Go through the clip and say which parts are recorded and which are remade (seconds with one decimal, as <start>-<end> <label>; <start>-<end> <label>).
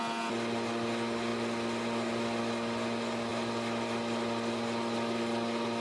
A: 0.0-5.8 recorded